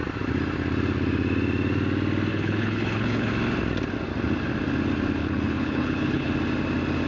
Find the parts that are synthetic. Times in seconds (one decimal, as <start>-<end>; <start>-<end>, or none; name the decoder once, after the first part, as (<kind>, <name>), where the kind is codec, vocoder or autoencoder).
2.3-3.3 (codec, HILCodec); 5.2-6.3

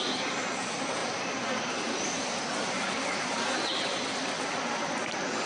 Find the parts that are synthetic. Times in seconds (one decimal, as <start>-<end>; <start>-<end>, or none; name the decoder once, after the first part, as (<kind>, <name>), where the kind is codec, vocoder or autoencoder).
none

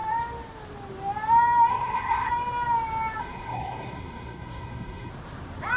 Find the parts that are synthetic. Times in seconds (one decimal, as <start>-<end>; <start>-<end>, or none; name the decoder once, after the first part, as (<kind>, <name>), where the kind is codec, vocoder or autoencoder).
1.7-2.3 (codec, SNAC); 3.2-5.1

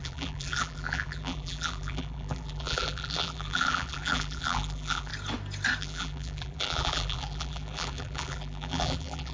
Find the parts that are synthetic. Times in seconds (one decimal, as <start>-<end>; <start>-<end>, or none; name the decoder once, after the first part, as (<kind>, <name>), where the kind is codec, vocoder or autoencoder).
0.0-5.1 (vocoder, BigVGAN v2); 5.8-9.3

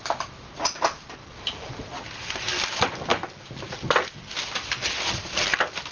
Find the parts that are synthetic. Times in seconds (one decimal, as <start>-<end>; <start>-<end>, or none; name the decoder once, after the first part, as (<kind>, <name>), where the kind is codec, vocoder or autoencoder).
1.2-1.7 (vocoder, BigVGAN v2); 3.1-4.1

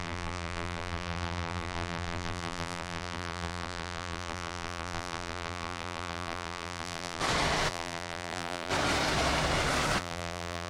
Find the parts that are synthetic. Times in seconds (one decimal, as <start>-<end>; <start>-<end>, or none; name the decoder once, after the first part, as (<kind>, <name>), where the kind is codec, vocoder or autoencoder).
0.0-7.2 (vocoder, BigVGAN v2); 7.7-8.7; 10.0-10.7

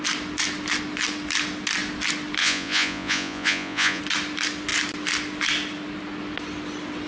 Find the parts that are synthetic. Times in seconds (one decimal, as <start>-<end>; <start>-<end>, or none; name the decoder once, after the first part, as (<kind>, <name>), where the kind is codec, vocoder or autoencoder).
2.4-4.0 (vocoder, Vocos)